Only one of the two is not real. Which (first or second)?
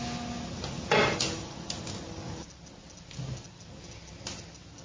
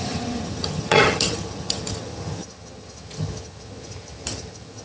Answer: second